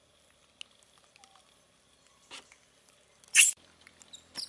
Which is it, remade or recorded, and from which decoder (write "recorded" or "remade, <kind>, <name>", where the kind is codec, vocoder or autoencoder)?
recorded